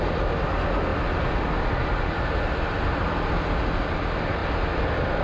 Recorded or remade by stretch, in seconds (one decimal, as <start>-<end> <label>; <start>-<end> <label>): 0.0-5.2 recorded